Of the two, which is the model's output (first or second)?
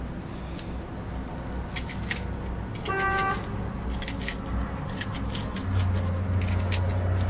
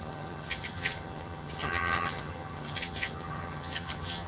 second